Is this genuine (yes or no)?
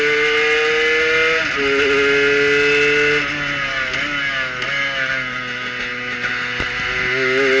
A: yes